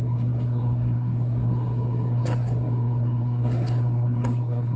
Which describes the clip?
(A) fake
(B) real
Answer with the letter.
A